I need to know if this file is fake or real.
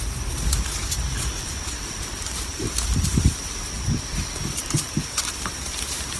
fake